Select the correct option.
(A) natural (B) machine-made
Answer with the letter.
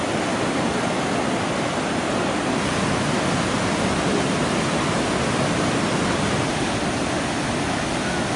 A